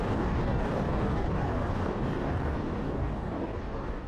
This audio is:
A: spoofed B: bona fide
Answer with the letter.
A